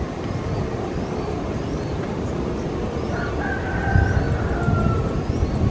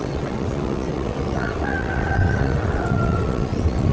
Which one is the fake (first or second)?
second